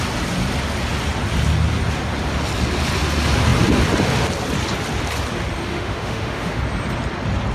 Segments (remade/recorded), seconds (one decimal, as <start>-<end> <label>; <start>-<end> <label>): 0.0-5.7 recorded; 5.7-6.6 remade; 6.6-7.5 recorded